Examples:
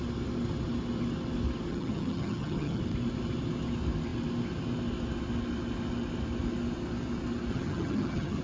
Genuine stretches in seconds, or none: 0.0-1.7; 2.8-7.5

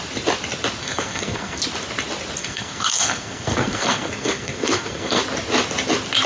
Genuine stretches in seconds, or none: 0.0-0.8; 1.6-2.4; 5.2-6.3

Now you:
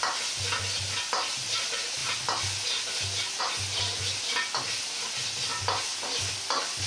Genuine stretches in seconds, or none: 0.0-6.9

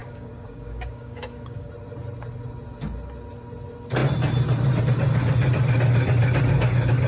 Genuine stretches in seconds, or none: 1.7-7.1